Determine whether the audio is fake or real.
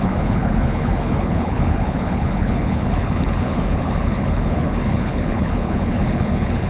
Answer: fake